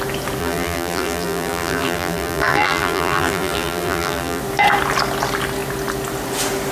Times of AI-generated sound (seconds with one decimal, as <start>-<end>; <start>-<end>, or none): 0.4-4.4